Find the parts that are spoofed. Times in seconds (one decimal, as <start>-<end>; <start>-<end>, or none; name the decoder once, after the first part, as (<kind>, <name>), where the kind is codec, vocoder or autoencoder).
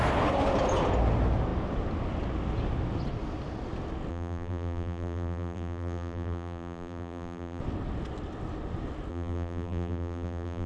4.1-7.6 (vocoder, BigVGAN v2); 9.1-10.7